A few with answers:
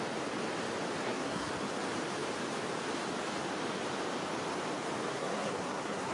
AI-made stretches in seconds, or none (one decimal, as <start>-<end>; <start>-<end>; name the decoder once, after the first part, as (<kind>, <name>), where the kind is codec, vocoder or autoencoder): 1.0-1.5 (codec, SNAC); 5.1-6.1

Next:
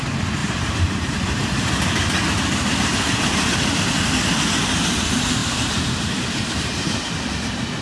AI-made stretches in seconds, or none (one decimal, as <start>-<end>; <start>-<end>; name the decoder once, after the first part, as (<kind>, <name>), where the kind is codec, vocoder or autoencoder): 0.4-1.1 (vocoder, BigVGAN v2); 5.4-7.2

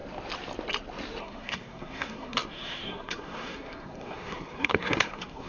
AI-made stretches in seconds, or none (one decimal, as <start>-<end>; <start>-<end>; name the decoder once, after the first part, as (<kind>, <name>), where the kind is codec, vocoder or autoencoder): 1.2-5.5 (codec, SNAC)

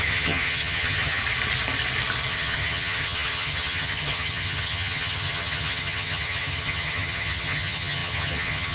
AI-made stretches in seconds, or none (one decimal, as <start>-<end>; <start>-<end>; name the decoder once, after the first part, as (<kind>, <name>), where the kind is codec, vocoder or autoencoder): 0.0-1.2 (vocoder, HiFi-GAN); 2.3-8.7

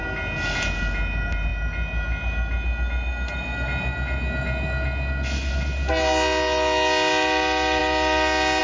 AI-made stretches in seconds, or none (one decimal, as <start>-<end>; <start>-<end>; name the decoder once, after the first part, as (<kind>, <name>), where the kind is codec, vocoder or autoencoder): none

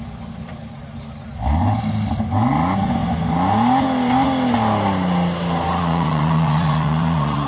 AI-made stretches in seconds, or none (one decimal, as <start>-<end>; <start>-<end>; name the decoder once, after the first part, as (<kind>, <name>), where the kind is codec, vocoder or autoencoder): 5.7-7.5 (vocoder, Vocos)

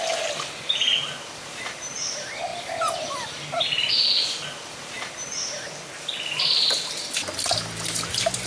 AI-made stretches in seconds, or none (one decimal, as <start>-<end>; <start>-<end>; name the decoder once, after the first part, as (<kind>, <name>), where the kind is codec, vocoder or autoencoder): none